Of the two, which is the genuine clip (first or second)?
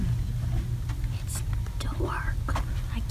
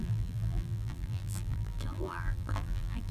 first